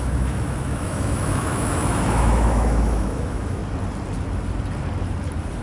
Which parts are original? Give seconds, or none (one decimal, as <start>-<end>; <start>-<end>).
3.6-5.6